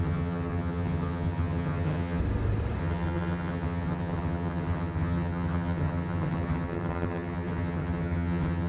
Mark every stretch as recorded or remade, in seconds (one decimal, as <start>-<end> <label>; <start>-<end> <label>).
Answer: 0.0-2.2 remade; 2.2-2.8 recorded; 2.8-8.7 remade